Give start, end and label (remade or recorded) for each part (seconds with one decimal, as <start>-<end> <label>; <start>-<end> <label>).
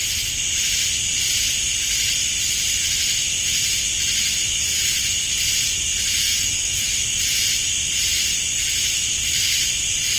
0.0-6.2 recorded; 6.2-6.9 remade; 6.9-10.2 recorded